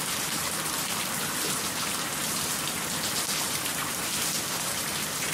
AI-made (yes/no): no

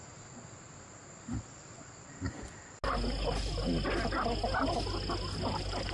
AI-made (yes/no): no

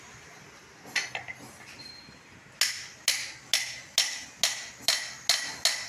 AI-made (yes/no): no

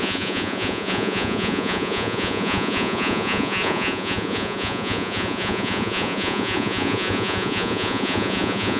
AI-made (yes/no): yes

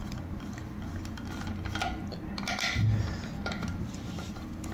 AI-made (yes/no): no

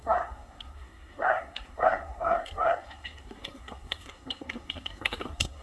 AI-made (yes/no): yes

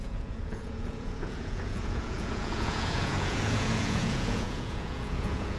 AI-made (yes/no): yes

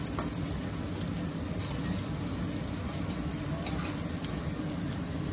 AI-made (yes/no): no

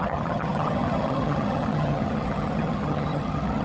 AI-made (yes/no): yes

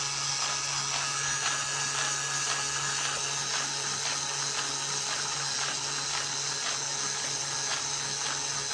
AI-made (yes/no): no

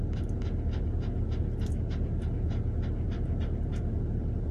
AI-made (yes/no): no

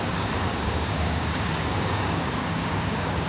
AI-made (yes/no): yes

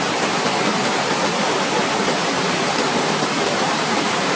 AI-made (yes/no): yes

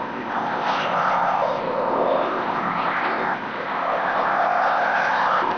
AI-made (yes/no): yes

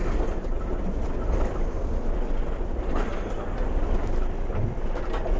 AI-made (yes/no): no